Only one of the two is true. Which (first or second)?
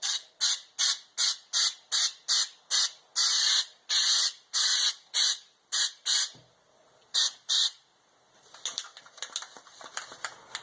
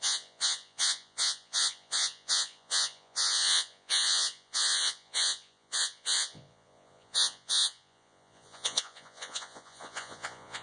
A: first